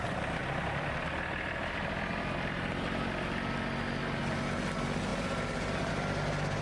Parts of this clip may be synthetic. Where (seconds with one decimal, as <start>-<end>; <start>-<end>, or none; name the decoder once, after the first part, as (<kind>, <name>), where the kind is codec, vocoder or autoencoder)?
5.1-5.9 (vocoder, BigVGAN v2)